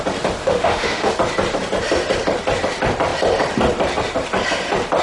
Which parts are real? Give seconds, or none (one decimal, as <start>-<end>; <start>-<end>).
0.0-0.4; 1.1-5.0

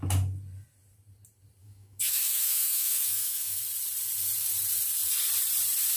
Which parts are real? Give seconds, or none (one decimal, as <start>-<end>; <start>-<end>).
0.0-1.6; 3.6-6.0